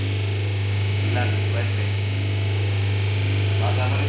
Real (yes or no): yes